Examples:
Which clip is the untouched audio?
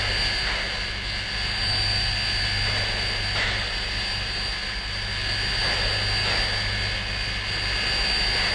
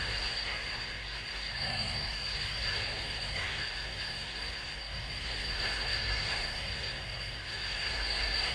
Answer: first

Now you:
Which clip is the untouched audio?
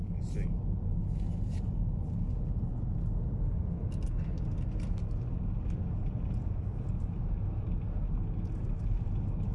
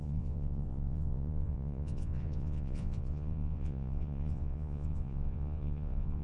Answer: first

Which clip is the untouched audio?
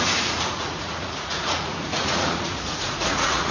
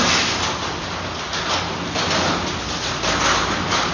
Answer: second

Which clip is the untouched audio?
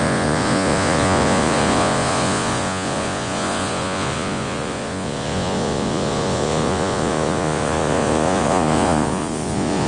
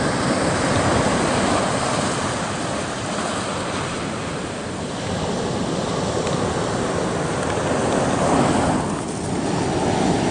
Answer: second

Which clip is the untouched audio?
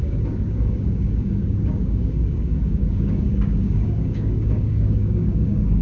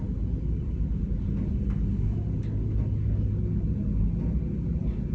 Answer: second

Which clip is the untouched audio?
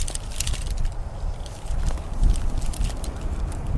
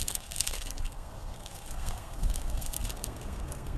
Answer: first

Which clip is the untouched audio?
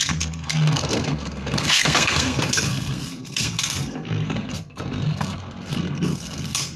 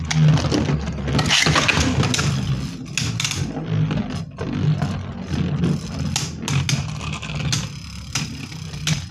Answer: second